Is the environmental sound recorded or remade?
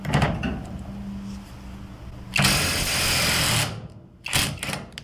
recorded